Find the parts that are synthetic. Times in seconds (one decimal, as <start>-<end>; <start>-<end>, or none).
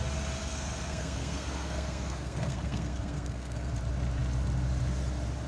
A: 0.4-3.7